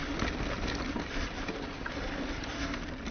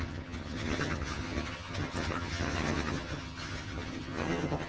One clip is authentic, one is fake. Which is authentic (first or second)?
first